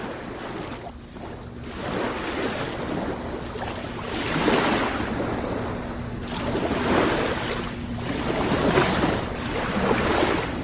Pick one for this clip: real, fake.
real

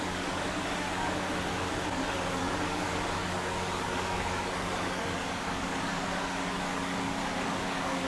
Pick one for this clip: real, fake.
fake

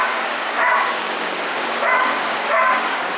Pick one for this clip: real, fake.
fake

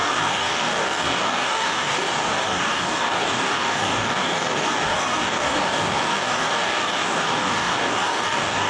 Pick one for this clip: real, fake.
fake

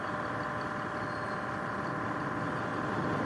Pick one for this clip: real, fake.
real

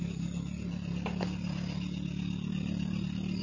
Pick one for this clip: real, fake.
real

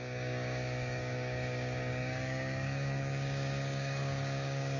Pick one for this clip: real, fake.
fake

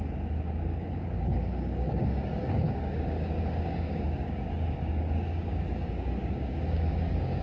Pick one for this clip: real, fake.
fake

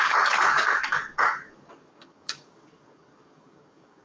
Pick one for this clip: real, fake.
fake